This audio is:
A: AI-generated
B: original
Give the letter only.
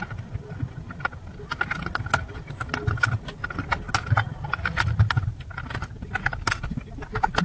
B